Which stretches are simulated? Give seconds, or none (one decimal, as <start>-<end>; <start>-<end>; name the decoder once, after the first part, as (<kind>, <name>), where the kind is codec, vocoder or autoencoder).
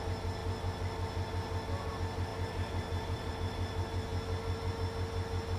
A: 2.3-3.3 (vocoder, BigVGAN v2)